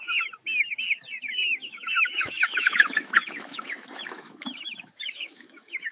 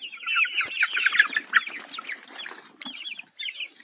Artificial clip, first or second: first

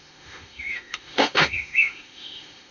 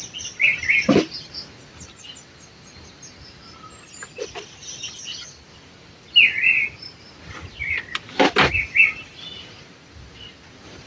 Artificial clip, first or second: first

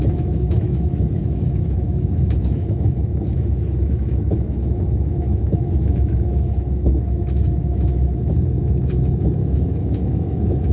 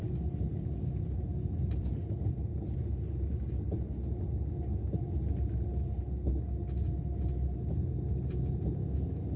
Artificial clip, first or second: first